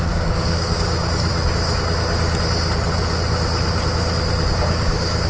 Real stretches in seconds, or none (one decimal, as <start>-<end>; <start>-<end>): 1.3-4.5